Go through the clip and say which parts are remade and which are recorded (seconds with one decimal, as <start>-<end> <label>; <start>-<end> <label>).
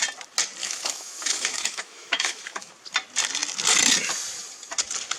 0.0-0.6 recorded; 0.6-2.7 remade; 2.7-5.2 recorded